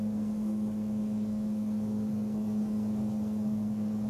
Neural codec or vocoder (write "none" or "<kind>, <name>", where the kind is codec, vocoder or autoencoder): codec, SNAC